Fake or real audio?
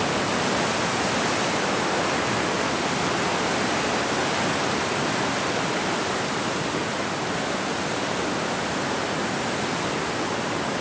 real